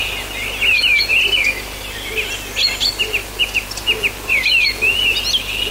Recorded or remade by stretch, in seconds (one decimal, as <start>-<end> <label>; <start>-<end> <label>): 0.0-5.7 recorded